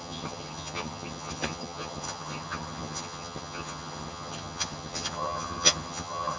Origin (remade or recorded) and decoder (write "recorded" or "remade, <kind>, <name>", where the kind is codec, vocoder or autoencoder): remade, vocoder, HiFi-GAN